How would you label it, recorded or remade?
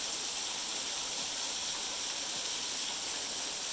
recorded